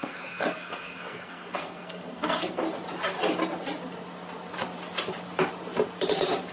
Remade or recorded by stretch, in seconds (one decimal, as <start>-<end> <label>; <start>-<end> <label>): 0.0-2.6 remade; 2.6-6.5 recorded